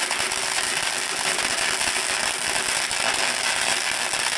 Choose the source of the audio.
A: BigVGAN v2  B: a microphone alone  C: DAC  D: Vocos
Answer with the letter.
B